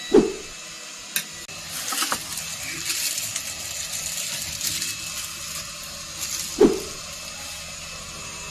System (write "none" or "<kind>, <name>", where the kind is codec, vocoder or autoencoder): none